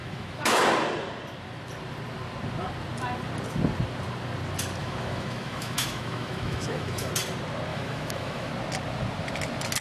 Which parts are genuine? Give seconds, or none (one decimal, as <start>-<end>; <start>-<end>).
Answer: 0.6-4.8; 7.1-7.7; 8.5-9.8